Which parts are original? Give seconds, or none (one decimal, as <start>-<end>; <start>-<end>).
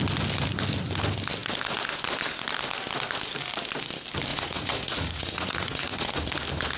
0.0-4.3; 6.2-6.8